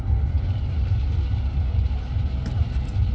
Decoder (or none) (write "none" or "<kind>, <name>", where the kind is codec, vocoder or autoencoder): none